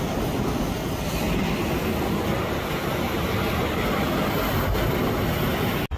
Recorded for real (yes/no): yes